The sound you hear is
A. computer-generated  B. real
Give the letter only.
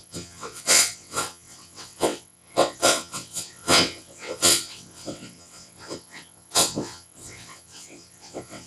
A